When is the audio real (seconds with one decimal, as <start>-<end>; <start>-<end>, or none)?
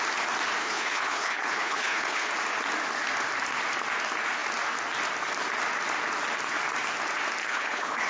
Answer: 0.0-0.6; 2.3-7.4